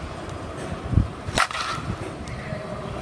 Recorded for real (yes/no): no